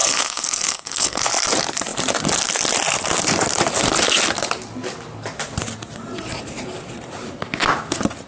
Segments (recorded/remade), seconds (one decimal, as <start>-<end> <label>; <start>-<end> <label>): 0.0-1.2 remade; 1.2-8.3 recorded